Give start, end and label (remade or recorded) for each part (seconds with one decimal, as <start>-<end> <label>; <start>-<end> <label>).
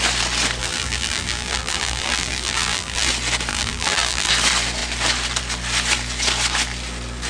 0.0-0.6 recorded; 0.6-3.1 remade; 3.1-3.5 recorded; 3.5-4.3 remade; 4.3-7.3 recorded